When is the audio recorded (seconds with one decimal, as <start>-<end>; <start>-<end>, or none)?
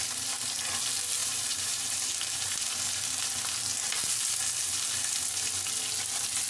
0.0-1.2; 2.5-6.5